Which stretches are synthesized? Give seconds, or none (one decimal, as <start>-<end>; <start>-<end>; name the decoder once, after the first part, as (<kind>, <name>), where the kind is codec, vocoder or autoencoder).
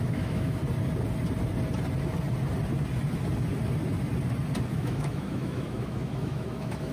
0.0-0.6 (autoencoder, DAC-VAE); 4.7-6.9